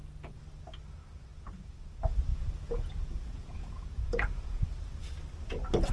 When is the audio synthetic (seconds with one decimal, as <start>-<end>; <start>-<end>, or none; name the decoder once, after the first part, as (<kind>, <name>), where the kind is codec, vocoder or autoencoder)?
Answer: 2.3-4.6 (vocoder, Vocos)